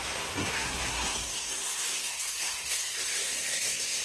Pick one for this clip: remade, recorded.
remade